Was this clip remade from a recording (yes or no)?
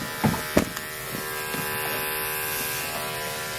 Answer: no